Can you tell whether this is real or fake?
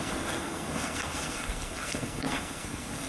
fake